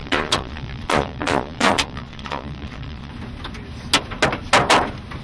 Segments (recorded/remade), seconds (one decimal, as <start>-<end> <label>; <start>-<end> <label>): 0.0-3.1 remade; 3.1-5.2 recorded